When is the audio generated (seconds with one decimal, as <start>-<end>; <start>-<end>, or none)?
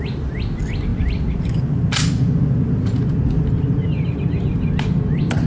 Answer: none